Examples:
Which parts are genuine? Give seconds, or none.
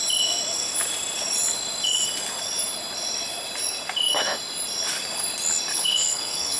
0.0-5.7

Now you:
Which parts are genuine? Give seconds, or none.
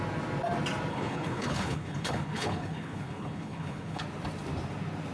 0.0-0.9; 4.0-5.1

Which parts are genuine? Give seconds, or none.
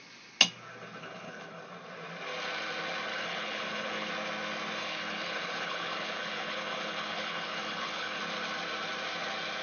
0.0-1.0; 1.6-3.1; 4.1-4.8; 8.2-9.6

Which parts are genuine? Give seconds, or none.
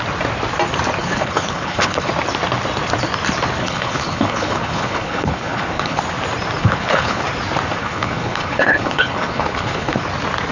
0.0-1.0; 2.1-3.6; 6.0-6.6; 7.2-7.8; 10.0-10.5